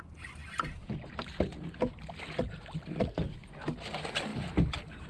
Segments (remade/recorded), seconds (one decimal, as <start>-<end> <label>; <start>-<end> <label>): 0.0-5.1 recorded